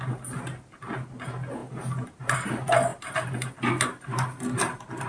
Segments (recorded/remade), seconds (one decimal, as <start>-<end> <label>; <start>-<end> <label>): 0.0-5.1 recorded